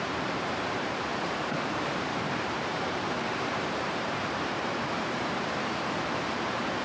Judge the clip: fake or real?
fake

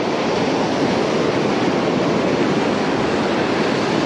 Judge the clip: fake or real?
fake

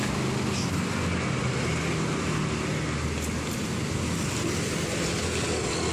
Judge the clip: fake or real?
real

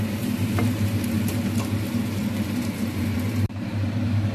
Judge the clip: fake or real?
fake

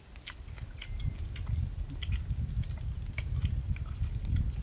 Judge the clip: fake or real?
real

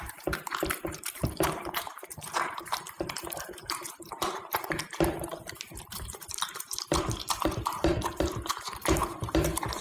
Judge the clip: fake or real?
fake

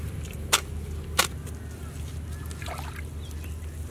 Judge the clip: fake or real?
real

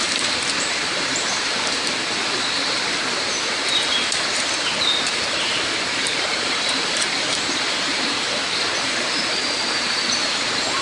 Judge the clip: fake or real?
fake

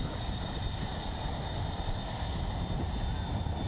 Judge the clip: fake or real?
real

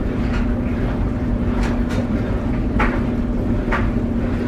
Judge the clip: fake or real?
fake